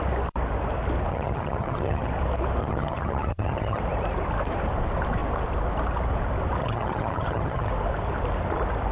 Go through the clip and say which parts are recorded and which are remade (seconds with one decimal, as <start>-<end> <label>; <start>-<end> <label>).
0.0-1.1 recorded; 1.1-2.1 remade; 2.1-2.6 recorded; 2.6-3.8 remade; 3.8-6.6 recorded; 6.6-7.7 remade; 7.7-8.9 recorded